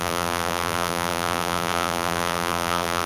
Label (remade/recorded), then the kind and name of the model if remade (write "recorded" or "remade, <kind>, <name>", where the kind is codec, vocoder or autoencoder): remade, vocoder, BigVGAN v2